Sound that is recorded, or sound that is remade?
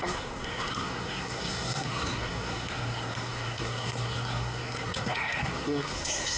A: remade